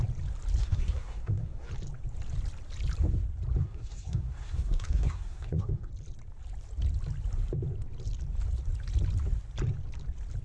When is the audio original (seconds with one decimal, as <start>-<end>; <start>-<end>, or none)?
0.0-0.6; 1.7-3.6; 5.9-10.4